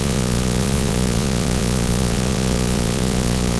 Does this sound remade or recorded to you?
remade